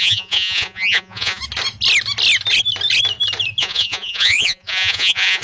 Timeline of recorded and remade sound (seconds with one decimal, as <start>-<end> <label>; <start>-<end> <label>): 0.0-1.4 remade; 1.4-3.6 recorded; 3.6-5.4 remade